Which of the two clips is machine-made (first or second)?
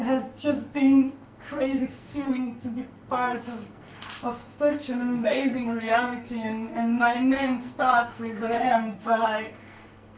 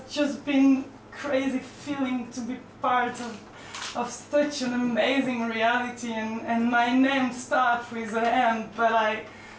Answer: first